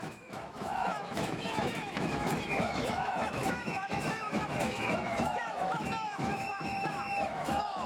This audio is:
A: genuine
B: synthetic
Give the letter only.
B